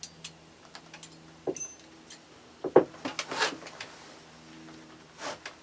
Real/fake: real